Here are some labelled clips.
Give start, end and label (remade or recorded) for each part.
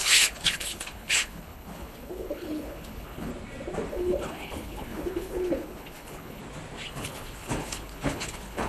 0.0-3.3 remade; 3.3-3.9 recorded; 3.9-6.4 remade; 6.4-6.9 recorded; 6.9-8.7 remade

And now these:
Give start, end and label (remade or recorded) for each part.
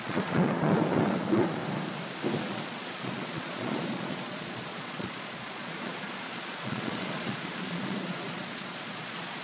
0.0-1.6 remade; 1.6-2.4 recorded; 2.4-9.4 remade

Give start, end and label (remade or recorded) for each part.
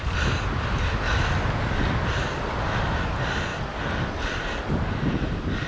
0.0-5.7 recorded